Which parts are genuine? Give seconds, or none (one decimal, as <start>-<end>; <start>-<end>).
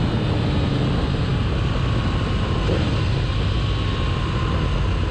0.0-5.1